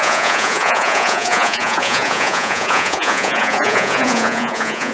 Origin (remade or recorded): remade